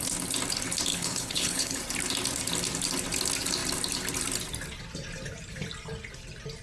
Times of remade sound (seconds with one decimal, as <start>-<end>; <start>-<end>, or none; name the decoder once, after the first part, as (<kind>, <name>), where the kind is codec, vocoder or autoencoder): 0.9-1.8 (codec, HILCodec)